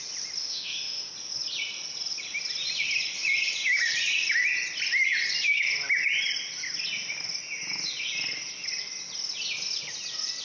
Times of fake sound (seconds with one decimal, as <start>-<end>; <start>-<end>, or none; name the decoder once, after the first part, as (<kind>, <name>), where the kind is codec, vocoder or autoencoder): 0.4-1.1 (autoencoder, DAC-VAE)